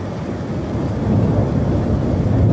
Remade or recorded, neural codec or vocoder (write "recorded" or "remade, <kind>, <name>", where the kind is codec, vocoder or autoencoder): recorded